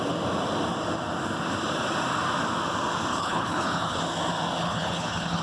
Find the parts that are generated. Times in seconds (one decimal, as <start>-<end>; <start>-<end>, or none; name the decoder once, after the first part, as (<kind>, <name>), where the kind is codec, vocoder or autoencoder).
3.1-4.0 (codec, HILCodec); 4.6-5.4